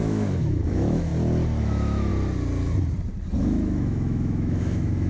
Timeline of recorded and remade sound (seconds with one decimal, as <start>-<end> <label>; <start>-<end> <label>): 0.0-1.1 remade; 1.1-1.6 recorded; 1.6-2.1 remade; 2.1-3.4 recorded; 3.4-5.1 remade